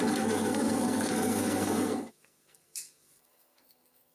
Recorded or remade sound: remade